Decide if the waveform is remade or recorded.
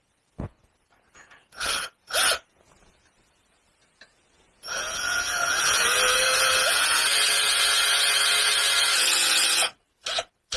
remade